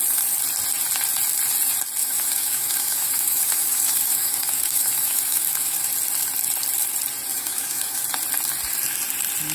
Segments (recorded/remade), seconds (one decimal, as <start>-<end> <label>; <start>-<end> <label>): 0.0-2.0 recorded; 2.0-5.9 remade; 5.9-7.3 recorded; 7.3-8.0 remade; 8.0-9.5 recorded